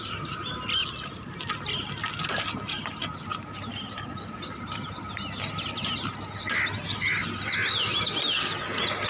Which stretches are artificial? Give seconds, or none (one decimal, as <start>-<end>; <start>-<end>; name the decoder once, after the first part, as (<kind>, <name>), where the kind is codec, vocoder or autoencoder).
none